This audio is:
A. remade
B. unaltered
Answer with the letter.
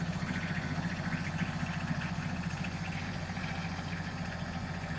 A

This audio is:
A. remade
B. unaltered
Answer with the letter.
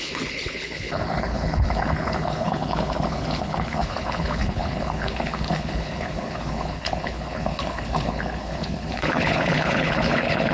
A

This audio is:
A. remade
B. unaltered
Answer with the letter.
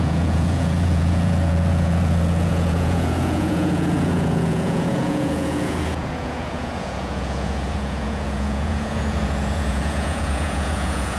A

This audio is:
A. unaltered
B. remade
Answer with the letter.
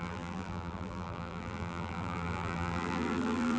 B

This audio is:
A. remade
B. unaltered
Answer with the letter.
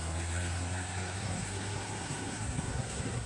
A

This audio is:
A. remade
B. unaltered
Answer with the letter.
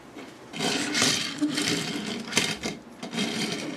B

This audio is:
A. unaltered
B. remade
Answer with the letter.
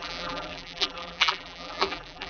B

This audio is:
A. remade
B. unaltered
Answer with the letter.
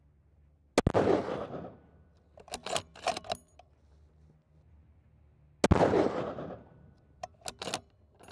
B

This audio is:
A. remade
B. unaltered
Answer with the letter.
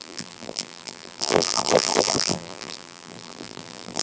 A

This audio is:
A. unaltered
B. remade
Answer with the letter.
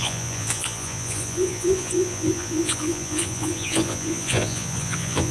B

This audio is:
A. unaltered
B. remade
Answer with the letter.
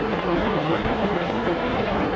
B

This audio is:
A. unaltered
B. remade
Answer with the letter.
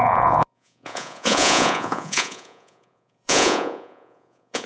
B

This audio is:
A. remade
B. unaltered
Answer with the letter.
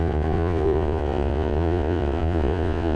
A